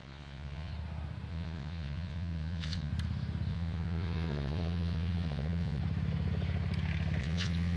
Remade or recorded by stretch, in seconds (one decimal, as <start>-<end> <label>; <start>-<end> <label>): 0.0-0.7 remade; 0.7-1.3 recorded; 1.3-2.9 remade; 2.9-3.5 recorded; 3.5-5.8 remade; 5.8-7.2 recorded; 7.2-7.8 remade